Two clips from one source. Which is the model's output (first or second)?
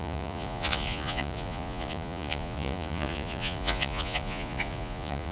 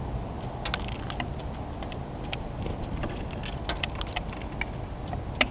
first